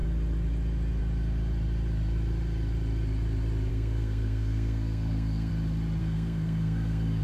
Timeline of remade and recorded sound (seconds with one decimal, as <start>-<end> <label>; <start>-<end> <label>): 0.0-3.7 recorded; 3.7-5.5 remade; 5.5-6.0 recorded; 6.0-7.2 remade